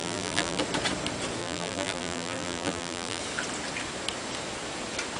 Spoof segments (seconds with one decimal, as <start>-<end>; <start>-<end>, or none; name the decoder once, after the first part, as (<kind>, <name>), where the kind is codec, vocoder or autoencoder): 0.0-0.6 (vocoder, BigVGAN v2); 1.4-3.2